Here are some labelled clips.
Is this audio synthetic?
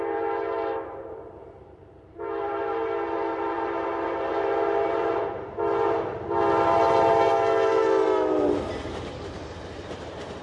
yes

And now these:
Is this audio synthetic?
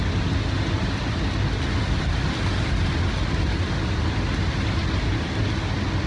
no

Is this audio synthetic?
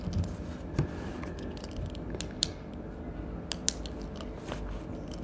no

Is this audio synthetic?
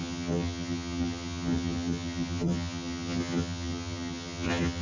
yes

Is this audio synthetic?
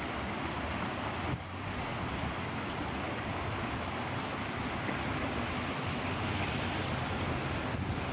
no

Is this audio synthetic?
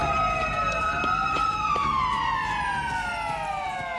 no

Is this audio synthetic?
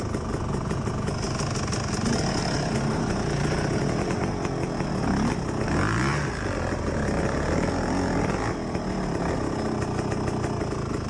no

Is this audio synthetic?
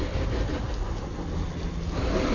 no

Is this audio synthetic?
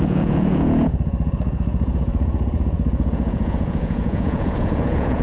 yes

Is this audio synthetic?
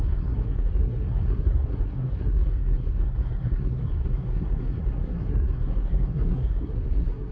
yes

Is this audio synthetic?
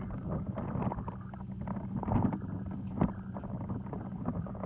no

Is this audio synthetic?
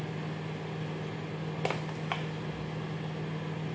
no